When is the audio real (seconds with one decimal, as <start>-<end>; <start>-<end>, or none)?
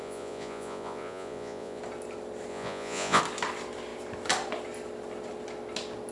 1.8-2.5; 3.2-6.1